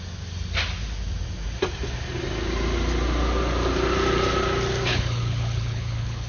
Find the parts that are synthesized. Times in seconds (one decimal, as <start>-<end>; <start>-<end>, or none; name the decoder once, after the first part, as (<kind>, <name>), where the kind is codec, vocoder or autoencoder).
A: 4.9-6.3 (codec, HILCodec)